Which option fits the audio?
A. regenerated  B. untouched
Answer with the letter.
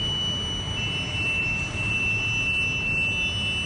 B